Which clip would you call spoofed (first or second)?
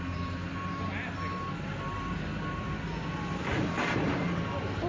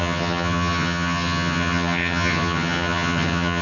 second